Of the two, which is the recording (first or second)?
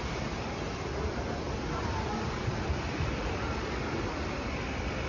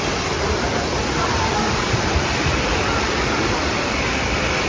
first